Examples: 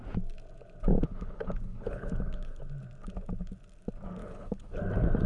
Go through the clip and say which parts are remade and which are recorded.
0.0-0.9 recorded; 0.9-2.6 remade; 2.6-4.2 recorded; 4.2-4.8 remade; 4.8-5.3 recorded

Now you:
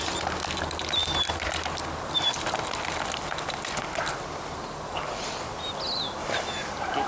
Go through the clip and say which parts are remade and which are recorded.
0.0-7.1 recorded

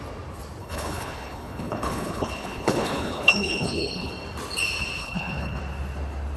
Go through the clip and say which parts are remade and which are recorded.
0.0-0.6 recorded; 0.6-4.1 remade; 4.1-5.0 recorded; 5.0-5.6 remade; 5.6-6.4 recorded

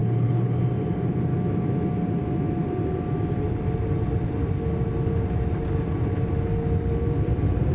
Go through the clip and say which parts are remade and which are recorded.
0.0-0.6 remade; 0.6-7.7 recorded

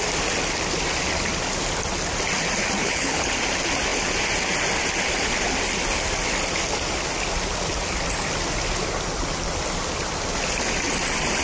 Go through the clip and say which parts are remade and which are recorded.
0.0-2.8 recorded; 2.8-3.3 remade; 3.3-11.4 recorded